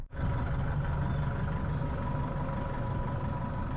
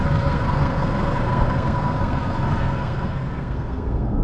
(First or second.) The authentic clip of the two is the first